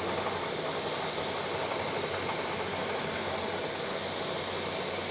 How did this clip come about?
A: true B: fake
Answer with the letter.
A